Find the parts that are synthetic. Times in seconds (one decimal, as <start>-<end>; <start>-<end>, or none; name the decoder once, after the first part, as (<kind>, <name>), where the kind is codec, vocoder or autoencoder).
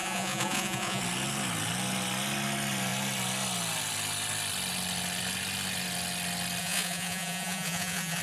0.0-1.0 (vocoder, Vocos); 6.6-8.2